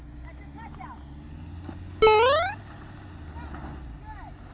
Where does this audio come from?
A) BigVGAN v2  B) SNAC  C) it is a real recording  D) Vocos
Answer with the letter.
C